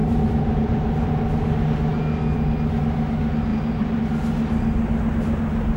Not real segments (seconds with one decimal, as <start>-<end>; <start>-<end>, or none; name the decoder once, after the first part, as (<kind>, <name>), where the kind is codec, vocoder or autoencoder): 0.0-1.1 (vocoder, BigVGAN v2); 3.5-4.0

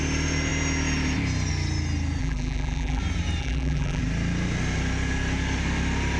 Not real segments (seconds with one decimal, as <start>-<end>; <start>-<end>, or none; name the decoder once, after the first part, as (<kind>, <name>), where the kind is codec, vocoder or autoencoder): 2.2-3.0 (vocoder, BigVGAN v2); 3.4-4.0